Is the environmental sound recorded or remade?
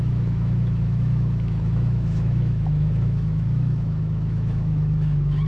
remade